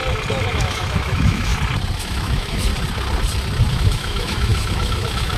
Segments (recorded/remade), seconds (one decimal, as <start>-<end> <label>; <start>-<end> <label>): 0.0-0.5 recorded; 0.5-1.5 remade; 1.5-2.0 recorded; 2.0-2.7 remade; 2.7-3.7 recorded; 3.7-5.4 remade